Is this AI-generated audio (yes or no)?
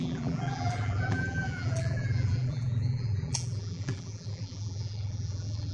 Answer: yes